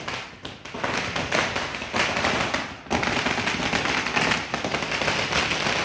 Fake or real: real